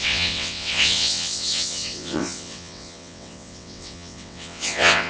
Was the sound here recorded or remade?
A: remade